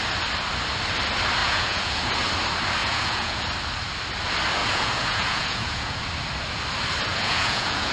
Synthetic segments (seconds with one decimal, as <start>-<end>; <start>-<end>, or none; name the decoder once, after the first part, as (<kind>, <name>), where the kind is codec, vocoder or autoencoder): 1.4-2.1 (vocoder, Vocos); 2.8-3.4; 4.6-6.0; 7.1-7.9